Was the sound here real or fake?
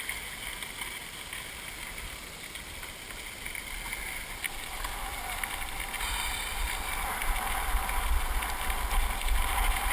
real